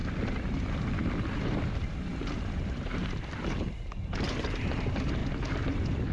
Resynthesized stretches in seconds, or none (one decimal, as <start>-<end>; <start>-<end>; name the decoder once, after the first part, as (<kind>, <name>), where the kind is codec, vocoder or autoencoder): 1.4-5.2 (vocoder, BigVGAN v2)